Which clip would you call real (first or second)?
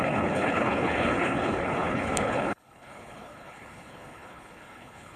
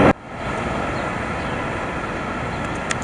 second